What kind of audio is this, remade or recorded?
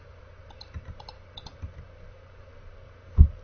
recorded